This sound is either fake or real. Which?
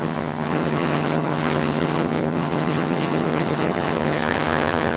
fake